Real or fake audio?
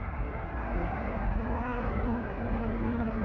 fake